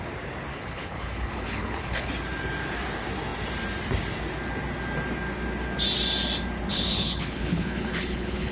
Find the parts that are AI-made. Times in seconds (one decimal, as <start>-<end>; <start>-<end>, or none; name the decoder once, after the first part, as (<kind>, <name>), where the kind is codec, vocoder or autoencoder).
0.5-2.1 (codec, HILCodec); 6.7-8.5